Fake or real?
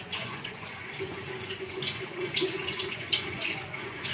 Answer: fake